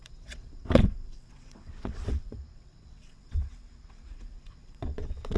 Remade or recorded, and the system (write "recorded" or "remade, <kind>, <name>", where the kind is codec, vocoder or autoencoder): remade, vocoder, WaveNeXt